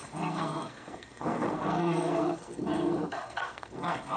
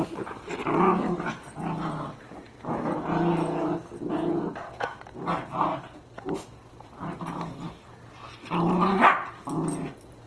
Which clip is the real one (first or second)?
second